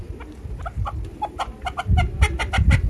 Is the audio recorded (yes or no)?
yes